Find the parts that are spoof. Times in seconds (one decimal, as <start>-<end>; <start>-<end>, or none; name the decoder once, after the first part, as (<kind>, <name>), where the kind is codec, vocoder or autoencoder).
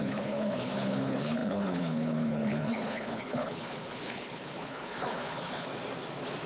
0.0-5.7 (codec, HILCodec)